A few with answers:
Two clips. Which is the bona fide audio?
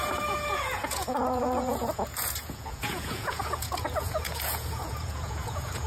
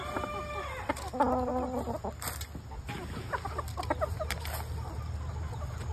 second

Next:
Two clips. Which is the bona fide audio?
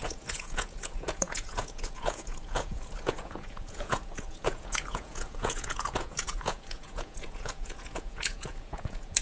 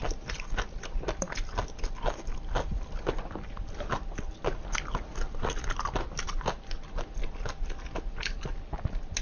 second